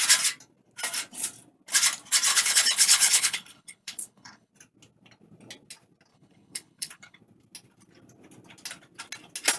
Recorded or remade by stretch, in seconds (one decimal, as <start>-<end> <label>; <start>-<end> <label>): 0.0-2.3 recorded; 2.3-4.5 remade; 4.5-6.1 recorded; 6.1-7.2 remade; 7.2-9.6 recorded